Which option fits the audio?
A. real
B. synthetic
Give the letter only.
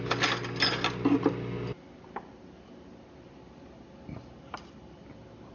A